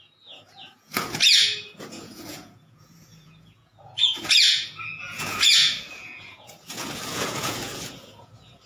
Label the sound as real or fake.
fake